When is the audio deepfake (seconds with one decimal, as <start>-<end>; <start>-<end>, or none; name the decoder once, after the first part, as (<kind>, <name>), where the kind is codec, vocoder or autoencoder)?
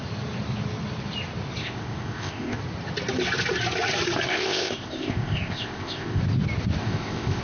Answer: 1.6-2.6 (codec, ZipCodec); 4.3-6.2; 6.8-7.4